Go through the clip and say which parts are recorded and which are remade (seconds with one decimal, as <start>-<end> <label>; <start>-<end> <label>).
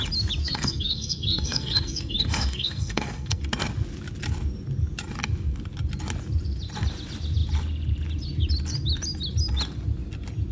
0.0-0.4 recorded; 0.4-3.4 remade; 3.4-10.5 recorded